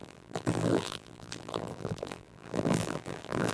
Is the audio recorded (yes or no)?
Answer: no